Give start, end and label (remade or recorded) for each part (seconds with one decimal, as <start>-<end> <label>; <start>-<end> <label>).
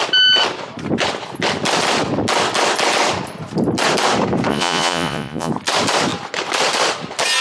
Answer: 0.0-4.5 recorded; 4.5-5.5 remade; 5.5-7.4 recorded